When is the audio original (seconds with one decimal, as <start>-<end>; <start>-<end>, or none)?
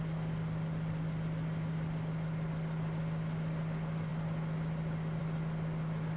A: 0.0-6.2